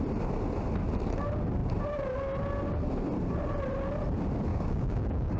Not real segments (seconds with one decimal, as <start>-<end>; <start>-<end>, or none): 4.5-5.4